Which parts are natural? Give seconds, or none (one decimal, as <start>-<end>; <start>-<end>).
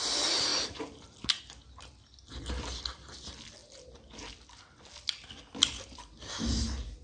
0.0-0.5; 1.4-7.0